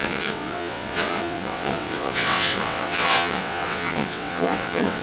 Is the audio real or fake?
fake